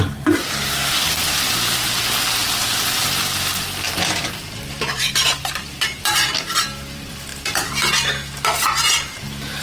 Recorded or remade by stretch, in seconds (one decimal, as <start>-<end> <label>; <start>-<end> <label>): 0.0-7.3 remade; 7.3-8.8 recorded; 8.8-9.6 remade